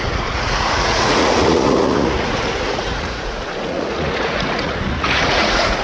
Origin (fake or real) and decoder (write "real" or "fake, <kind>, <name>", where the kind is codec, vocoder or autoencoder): fake, vocoder, Vocos